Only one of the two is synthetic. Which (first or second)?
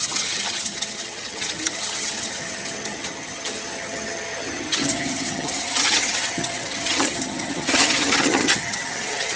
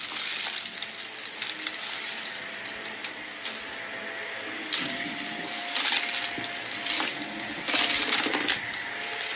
first